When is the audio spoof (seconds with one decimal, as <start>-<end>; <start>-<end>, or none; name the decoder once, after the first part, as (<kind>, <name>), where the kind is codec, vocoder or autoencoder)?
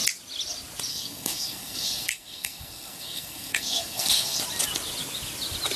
0.9-4.4 (codec, SNAC)